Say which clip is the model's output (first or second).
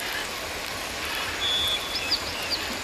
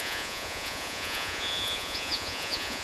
second